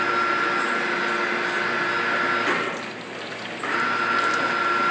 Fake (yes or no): no